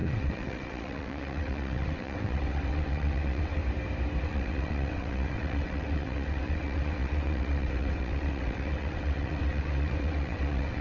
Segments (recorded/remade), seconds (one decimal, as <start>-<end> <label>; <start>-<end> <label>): 0.0-3.6 remade; 3.6-4.2 recorded; 4.2-10.8 remade